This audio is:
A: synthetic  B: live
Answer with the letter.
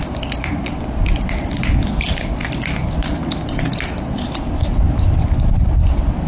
B